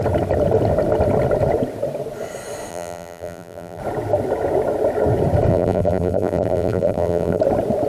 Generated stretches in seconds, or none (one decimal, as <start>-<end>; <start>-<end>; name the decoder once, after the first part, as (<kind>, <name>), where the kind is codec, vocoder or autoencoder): 2.7-3.8 (vocoder, BigVGAN v2); 5.5-7.4